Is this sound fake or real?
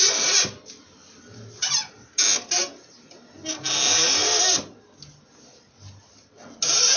real